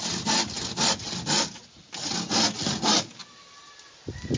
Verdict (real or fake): real